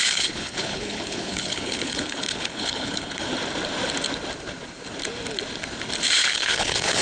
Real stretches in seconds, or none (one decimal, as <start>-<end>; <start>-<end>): 3.3-6.2

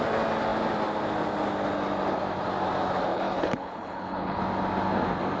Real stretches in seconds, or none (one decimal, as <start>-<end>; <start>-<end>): 0.0-3.1; 4.4-5.4

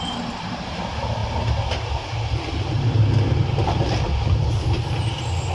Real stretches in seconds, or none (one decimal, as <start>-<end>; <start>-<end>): 0.0-5.5

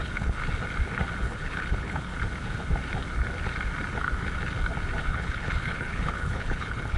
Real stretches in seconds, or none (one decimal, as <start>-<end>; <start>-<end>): 0.4-1.2; 2.1-5.1

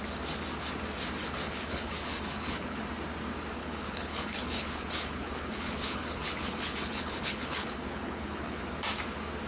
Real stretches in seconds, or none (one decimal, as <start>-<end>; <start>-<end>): 0.0-1.2; 2.8-3.6; 8.6-9.5